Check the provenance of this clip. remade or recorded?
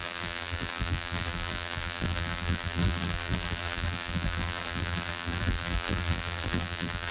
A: remade